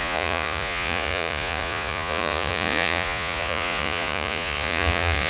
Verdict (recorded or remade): remade